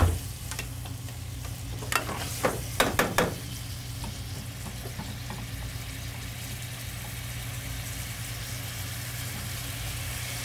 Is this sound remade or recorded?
recorded